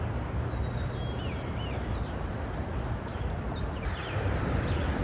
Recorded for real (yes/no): yes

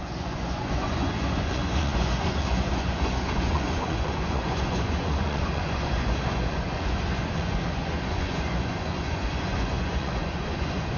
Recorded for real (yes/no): no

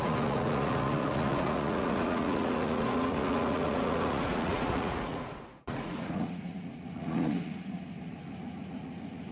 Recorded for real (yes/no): no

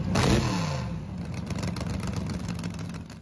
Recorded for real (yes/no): yes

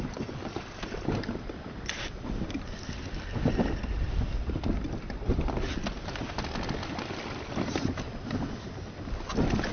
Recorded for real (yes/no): yes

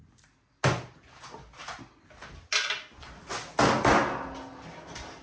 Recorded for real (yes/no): yes